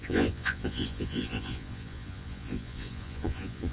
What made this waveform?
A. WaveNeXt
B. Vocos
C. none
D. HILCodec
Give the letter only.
B